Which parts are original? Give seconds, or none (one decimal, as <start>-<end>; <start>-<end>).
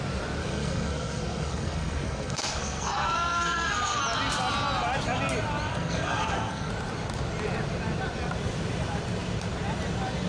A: 0.0-0.4; 4.0-5.7; 6.7-10.3